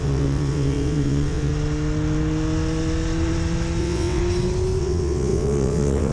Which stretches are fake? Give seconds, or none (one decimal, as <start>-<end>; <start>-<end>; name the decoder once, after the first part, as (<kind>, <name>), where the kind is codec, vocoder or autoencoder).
0.0-1.5 (vocoder, WaveNeXt); 3.8-4.2; 4.8-6.1